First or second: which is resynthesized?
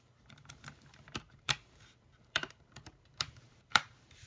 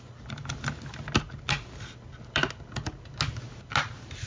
first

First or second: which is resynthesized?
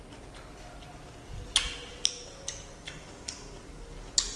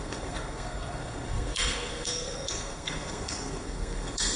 second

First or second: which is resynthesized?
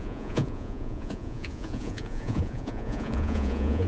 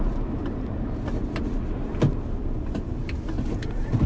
first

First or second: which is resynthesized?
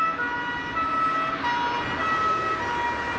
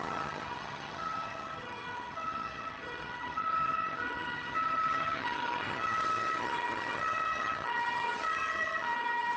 second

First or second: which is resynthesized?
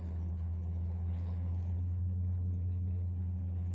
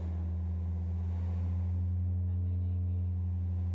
first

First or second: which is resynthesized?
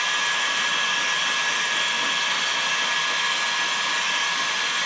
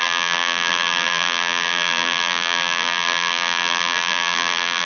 second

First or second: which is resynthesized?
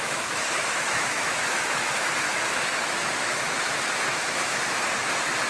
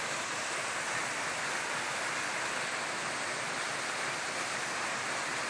first